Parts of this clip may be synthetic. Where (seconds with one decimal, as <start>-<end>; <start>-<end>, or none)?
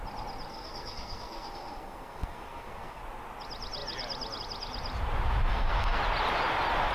0.5-3.0; 5.5-6.0